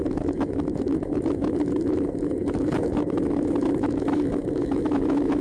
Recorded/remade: remade